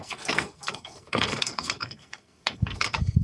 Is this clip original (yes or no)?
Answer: no